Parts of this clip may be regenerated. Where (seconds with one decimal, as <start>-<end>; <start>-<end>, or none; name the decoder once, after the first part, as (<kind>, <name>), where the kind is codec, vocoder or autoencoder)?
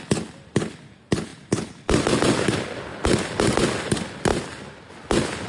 none